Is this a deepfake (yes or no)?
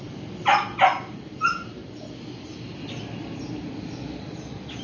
no